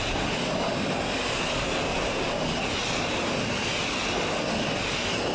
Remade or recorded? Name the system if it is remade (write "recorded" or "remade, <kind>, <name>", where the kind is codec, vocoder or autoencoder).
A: recorded